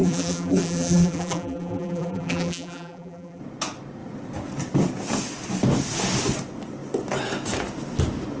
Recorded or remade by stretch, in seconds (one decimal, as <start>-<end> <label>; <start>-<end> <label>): 0.0-3.4 remade; 3.4-8.4 recorded